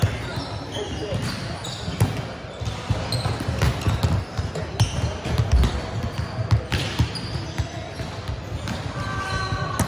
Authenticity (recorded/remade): recorded